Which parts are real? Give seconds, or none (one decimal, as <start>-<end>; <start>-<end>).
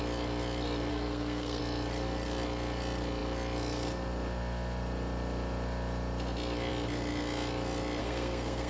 0.0-0.9; 1.6-8.0